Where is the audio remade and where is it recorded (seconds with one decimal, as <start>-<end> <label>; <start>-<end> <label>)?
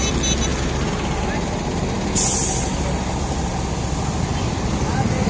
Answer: 0.0-5.3 recorded